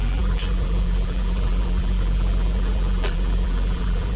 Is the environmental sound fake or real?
fake